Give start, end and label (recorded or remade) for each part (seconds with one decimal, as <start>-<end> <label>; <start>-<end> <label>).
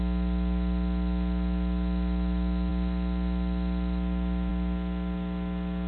0.0-5.9 recorded